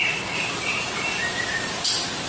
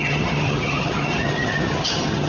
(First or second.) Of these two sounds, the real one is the first